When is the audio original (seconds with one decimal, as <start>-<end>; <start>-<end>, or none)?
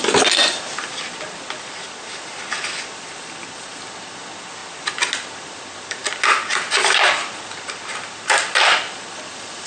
0.0-9.7